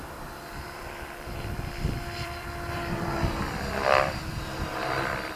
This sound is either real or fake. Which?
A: fake